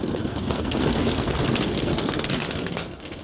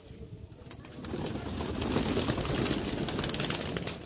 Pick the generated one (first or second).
first